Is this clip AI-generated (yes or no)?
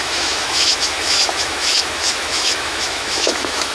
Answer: yes